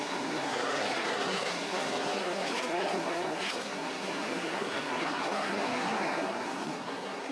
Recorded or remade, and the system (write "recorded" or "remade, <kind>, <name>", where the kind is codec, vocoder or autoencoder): remade, codec, SNAC